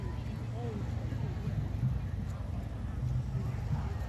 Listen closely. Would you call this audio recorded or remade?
recorded